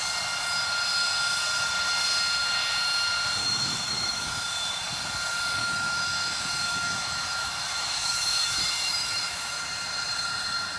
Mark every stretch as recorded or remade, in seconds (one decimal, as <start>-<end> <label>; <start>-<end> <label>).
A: 0.0-3.4 recorded; 3.4-4.8 remade; 4.8-5.6 recorded; 5.6-9.6 remade; 9.6-10.8 recorded